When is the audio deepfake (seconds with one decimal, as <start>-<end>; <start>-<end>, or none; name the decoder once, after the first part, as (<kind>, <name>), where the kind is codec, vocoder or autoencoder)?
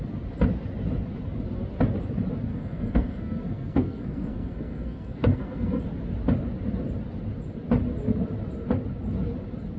2.5-5.8 (codec, SNAC)